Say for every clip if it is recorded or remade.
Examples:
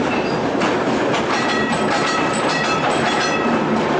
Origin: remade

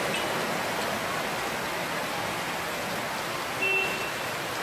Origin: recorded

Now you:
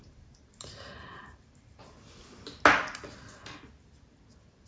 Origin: recorded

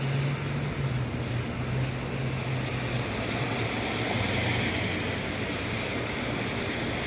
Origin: recorded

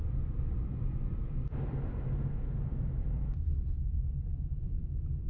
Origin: remade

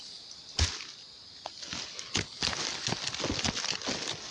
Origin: recorded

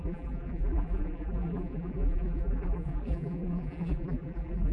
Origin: remade